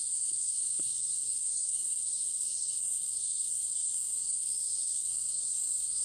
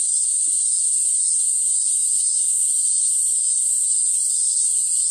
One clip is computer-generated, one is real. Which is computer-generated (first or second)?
first